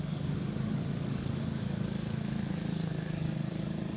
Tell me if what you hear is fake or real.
fake